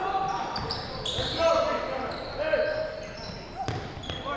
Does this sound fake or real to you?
real